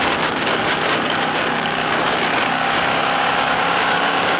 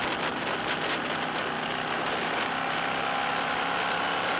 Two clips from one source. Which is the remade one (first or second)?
first